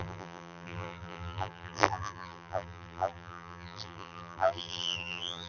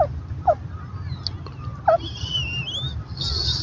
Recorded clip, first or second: second